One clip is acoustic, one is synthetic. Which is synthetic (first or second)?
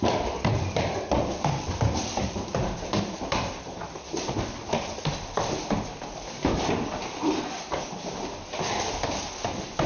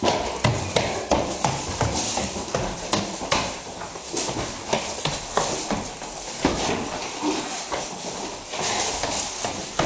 first